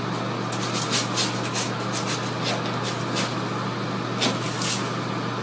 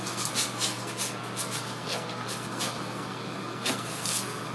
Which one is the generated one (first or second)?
second